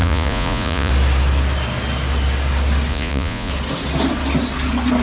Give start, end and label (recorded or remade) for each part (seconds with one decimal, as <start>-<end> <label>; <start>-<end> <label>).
0.0-0.9 remade; 0.9-2.9 recorded; 2.9-3.5 remade; 3.5-5.0 recorded